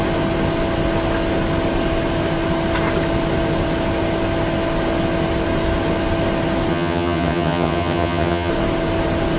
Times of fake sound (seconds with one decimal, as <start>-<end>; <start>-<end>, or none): 6.7-8.5